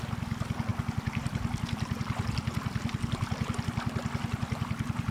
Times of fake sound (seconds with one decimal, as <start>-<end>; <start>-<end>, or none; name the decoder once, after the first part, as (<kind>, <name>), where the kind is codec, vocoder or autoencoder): none